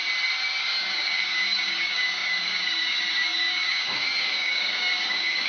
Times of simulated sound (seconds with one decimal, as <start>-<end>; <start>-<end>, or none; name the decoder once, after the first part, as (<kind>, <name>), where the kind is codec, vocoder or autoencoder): 0.6-5.5 (codec, DAC)